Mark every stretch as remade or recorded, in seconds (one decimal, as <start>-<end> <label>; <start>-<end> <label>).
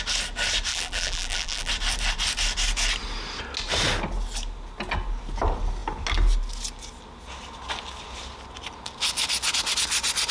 0.0-0.7 recorded; 0.7-1.7 remade; 1.7-10.3 recorded